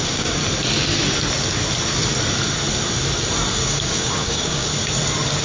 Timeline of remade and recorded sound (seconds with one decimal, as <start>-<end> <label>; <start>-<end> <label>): 0.0-0.4 remade; 0.4-3.5 recorded; 3.5-4.7 remade; 4.7-5.4 recorded